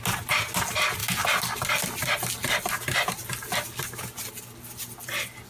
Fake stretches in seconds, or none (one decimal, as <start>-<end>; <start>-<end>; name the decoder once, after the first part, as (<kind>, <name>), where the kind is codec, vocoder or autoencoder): none